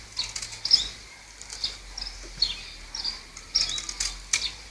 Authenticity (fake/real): real